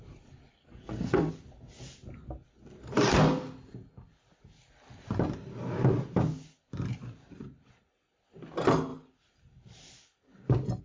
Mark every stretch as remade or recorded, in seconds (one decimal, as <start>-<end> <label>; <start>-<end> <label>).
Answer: 0.0-0.6 recorded; 0.6-1.3 remade; 1.3-10.8 recorded